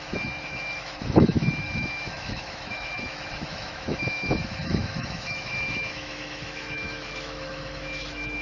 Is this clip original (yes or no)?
no